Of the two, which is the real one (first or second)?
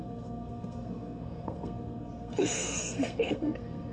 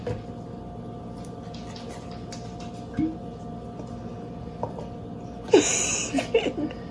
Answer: second